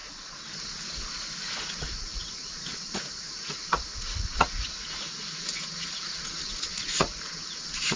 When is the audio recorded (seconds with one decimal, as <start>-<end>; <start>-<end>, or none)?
0.0-1.5